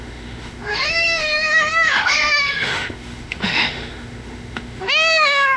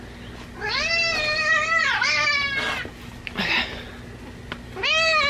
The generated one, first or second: first